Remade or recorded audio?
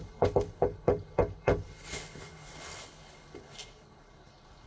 remade